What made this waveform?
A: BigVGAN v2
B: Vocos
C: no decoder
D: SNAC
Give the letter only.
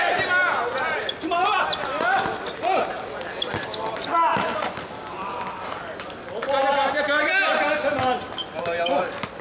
C